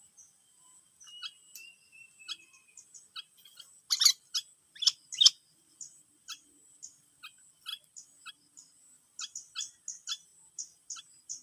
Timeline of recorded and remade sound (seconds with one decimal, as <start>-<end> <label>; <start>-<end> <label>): 0.0-11.4 recorded